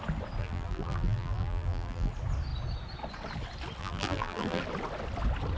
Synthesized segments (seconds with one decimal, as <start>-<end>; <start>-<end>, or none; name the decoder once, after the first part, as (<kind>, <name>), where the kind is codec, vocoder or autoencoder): 0.4-2.1 (vocoder, BigVGAN v2); 3.8-4.6